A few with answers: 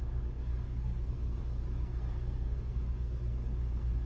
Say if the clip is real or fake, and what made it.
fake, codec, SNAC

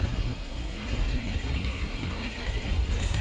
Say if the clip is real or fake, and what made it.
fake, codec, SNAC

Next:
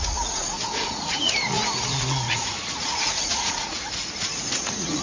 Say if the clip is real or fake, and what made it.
fake, vocoder, Vocos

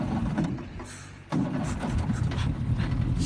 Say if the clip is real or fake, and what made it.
real